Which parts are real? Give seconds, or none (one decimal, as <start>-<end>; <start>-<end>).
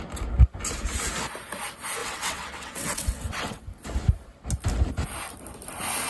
0.0-2.0; 3.6-6.1